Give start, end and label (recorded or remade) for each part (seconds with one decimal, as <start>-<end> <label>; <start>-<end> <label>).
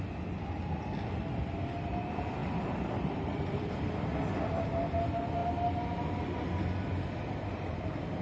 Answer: 0.0-2.4 recorded; 2.4-3.7 remade; 3.7-8.2 recorded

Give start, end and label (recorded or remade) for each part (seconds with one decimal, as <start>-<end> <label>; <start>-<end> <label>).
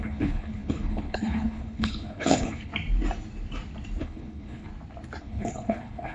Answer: 0.0-2.7 remade; 2.7-4.0 recorded; 4.0-4.7 remade; 4.7-5.2 recorded; 5.2-6.1 remade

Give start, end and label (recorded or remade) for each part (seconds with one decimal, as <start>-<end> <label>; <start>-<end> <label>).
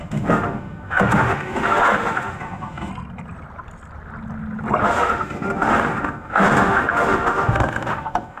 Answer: 0.0-2.9 remade; 2.9-4.8 recorded; 4.8-8.4 remade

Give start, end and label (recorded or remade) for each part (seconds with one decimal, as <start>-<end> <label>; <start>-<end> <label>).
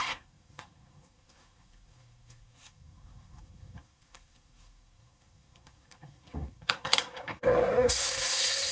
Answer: 0.0-8.7 remade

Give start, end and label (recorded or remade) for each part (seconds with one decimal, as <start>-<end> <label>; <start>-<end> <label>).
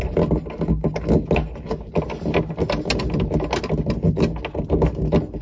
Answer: 0.0-5.4 recorded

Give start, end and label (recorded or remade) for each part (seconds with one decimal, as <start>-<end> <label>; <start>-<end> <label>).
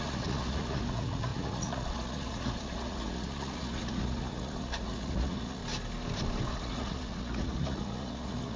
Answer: 0.0-5.6 remade; 5.6-6.5 recorded; 6.5-8.6 remade